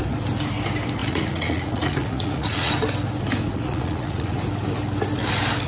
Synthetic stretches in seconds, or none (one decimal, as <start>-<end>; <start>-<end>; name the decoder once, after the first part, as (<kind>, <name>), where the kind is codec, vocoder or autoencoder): 1.0-2.7 (vocoder, Vocos); 3.5-4.4